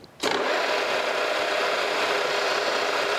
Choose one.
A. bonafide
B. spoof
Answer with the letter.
A